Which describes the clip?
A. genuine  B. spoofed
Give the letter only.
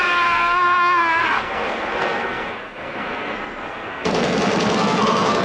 B